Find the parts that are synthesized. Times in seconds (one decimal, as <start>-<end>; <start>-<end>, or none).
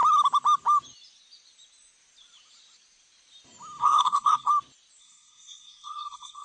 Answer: 3.8-4.5; 5.0-6.4